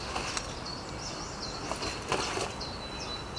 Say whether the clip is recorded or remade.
recorded